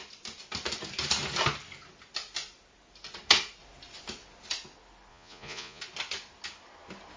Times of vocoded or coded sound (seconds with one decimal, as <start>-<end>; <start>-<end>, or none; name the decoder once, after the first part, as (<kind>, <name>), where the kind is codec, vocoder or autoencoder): 5.1-5.8 (vocoder, Vocos)